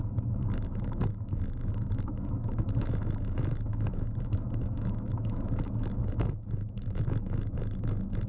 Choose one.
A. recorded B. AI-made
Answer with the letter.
B